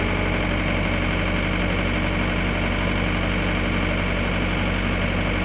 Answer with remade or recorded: recorded